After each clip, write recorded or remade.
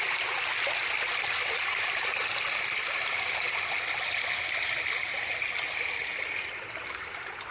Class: recorded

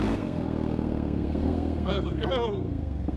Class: remade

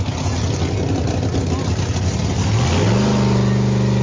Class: recorded